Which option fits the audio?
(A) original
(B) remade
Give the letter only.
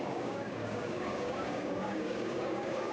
B